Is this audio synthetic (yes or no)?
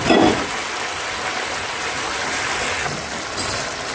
no